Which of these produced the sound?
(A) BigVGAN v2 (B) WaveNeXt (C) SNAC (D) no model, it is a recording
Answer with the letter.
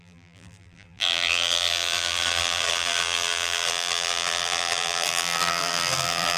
A